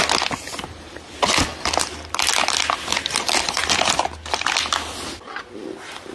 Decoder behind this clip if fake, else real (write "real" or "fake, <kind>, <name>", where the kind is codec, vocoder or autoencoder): real